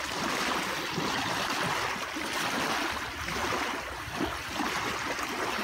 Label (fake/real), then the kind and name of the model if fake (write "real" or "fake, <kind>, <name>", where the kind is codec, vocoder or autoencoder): real